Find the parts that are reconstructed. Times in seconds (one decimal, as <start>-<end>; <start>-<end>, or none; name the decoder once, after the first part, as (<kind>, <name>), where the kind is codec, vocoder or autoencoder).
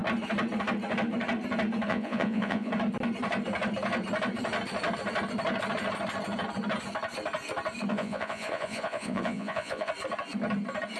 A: 1.9-2.7 (vocoder, Vocos); 7.9-9.9